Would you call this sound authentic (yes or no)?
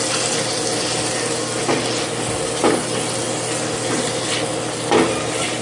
yes